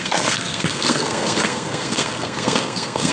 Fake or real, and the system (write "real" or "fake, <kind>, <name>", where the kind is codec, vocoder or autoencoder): fake, codec, SNAC